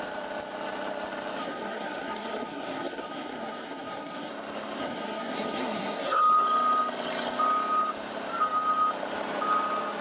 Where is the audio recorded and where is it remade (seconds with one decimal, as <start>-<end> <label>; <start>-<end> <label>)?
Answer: 0.0-1.4 recorded; 1.4-4.3 remade; 4.3-4.8 recorded; 4.8-6.2 remade; 6.2-10.0 recorded